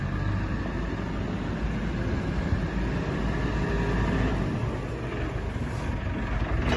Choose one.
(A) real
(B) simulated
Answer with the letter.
A